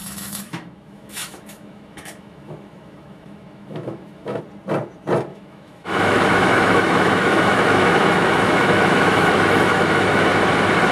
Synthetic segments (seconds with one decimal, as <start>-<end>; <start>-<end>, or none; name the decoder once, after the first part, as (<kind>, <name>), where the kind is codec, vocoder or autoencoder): 0.0-4.4 (autoencoder, DAC-VAE); 5.3-10.2